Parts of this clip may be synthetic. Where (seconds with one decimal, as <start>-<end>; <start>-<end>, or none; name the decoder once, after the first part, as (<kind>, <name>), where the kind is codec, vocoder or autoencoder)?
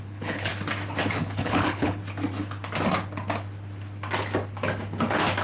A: 0.0-0.5 (codec, HILCodec); 1.2-2.0